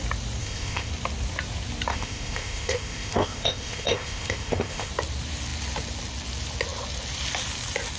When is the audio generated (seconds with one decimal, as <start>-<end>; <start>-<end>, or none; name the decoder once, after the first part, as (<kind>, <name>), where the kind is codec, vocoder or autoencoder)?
0.4-0.9 (codec, ZipCodec); 1.9-4.9